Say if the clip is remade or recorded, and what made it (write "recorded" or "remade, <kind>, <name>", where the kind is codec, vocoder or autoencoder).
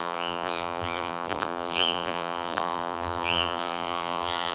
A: remade, vocoder, BigVGAN v2